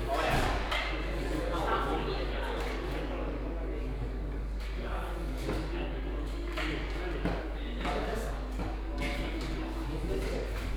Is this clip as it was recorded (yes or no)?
no